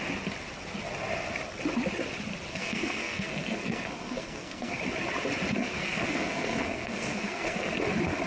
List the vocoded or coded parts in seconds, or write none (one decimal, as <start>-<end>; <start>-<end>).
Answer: 2.5-4.8; 5.6-7.7